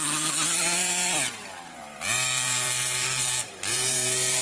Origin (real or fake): fake